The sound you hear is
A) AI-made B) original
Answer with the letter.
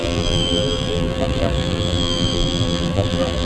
A